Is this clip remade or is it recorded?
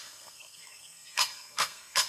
remade